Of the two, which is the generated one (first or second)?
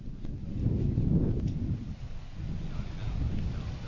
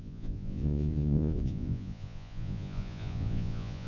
second